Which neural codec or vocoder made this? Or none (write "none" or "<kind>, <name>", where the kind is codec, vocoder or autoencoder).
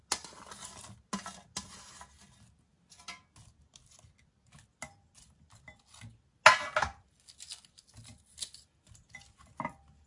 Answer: none